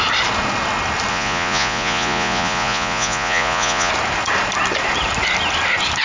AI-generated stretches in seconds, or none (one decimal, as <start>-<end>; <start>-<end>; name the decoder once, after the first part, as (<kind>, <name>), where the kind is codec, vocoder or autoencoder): 1.1-3.9 (vocoder, Vocos)